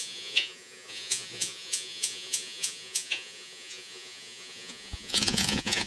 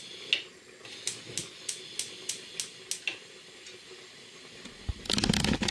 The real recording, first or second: second